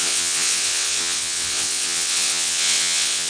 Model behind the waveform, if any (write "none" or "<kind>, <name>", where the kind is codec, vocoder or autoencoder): vocoder, WaveNeXt